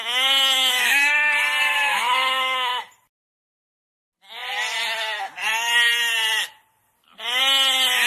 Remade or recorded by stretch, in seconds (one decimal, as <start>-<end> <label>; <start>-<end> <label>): 0.0-1.1 remade; 1.1-1.6 recorded; 1.6-2.7 remade; 2.7-8.1 recorded